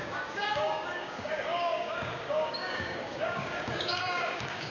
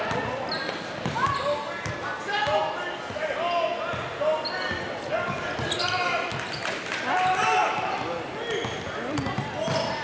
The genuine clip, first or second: second